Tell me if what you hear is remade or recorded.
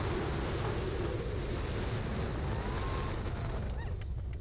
recorded